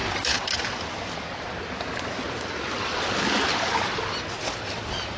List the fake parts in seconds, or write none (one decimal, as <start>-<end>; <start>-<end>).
none